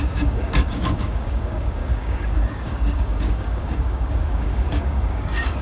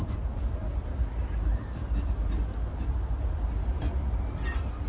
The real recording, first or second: second